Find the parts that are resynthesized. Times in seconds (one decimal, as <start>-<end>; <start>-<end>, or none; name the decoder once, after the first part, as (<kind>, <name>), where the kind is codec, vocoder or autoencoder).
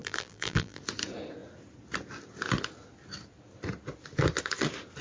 0.0-0.8 (vocoder, BigVGAN v2)